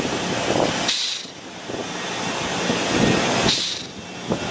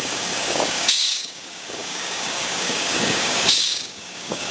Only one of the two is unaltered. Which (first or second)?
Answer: first